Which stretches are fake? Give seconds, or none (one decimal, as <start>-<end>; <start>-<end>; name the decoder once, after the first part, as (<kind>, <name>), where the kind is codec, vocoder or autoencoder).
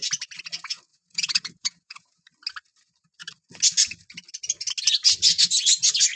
0.9-2.2 (vocoder, Vocos)